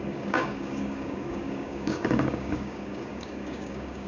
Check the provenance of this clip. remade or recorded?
remade